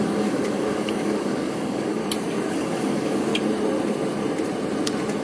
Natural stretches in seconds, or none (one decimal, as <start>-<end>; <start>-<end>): 2.0-2.5; 3.3-5.2